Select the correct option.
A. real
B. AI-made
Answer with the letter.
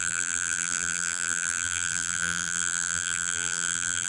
B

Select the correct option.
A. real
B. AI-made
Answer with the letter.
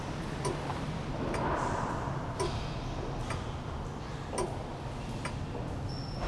A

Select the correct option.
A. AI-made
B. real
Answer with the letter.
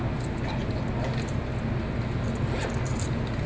B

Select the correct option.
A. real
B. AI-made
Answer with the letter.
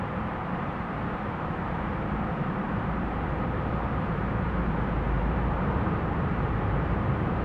B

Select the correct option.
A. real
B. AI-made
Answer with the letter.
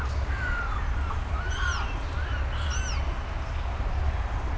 A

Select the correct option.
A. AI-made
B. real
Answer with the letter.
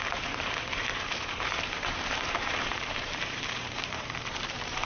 A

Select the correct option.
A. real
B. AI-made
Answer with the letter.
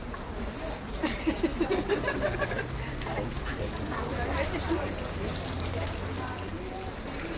B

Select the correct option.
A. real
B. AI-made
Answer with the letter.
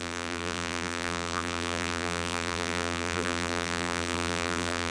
B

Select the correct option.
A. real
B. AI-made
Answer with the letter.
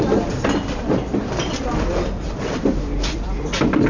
B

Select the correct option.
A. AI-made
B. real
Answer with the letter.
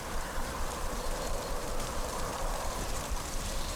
A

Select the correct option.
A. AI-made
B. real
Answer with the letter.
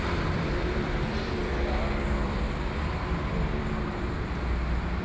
A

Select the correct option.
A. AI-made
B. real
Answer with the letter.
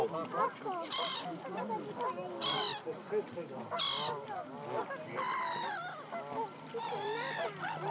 B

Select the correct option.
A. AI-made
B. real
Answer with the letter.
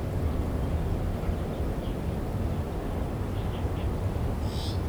B